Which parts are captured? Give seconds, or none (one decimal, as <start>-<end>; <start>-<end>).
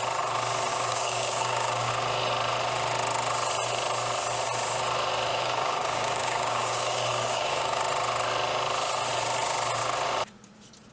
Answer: 0.0-0.7; 1.9-5.3; 7.8-10.9